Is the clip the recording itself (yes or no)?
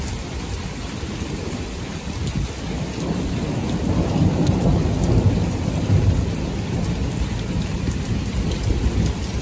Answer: yes